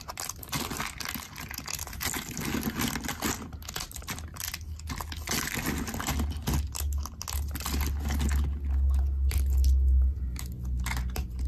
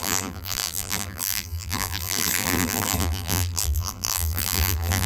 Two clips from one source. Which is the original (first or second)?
first